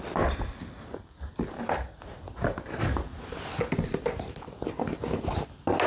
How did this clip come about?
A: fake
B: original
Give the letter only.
B